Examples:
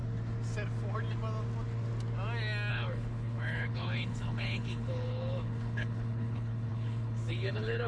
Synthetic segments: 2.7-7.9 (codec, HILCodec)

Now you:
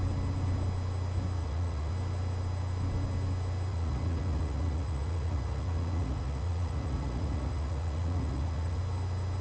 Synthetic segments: 1.4-1.9 (vocoder, Vocos); 3.7-8.8